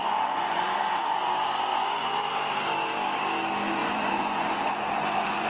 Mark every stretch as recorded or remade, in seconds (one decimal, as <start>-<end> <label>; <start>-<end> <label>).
0.0-1.0 remade; 1.0-1.7 recorded; 1.7-2.3 remade; 2.3-3.8 recorded; 3.8-5.5 remade